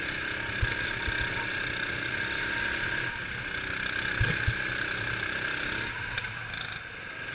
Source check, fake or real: real